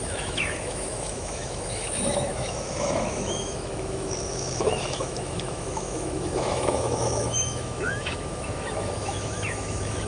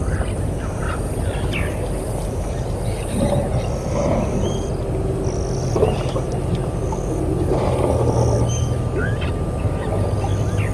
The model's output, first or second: first